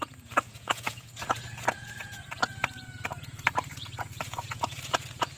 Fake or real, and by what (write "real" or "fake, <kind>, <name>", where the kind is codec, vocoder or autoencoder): fake, vocoder, Vocos